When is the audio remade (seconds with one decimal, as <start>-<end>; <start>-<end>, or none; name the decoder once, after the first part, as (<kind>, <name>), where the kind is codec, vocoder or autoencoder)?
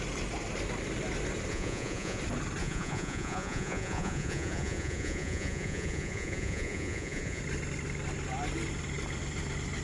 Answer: 1.5-2.2 (vocoder, Vocos); 2.6-7.4